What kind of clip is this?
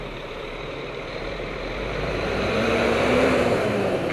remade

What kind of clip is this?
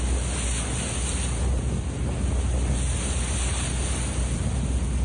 recorded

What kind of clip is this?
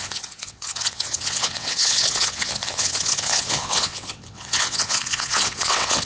remade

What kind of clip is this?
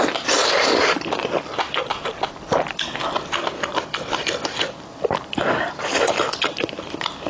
recorded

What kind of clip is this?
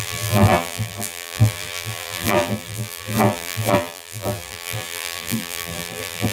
remade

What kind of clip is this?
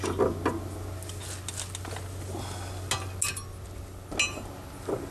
recorded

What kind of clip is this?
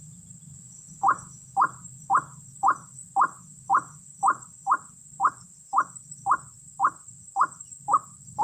recorded